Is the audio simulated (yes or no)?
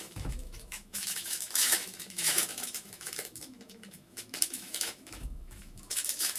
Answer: yes